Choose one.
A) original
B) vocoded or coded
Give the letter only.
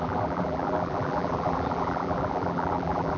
B